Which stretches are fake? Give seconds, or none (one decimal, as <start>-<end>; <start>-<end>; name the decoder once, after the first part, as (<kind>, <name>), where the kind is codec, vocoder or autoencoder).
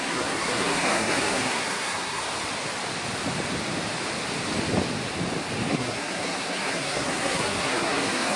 0.0-2.2 (codec, SNAC); 5.7-8.4